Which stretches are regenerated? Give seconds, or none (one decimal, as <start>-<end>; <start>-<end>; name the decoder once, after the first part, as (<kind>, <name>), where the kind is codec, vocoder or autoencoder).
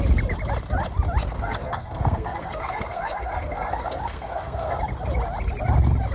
1.2-4.8 (codec, SNAC)